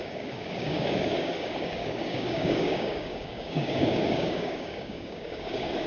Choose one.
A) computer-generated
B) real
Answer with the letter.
A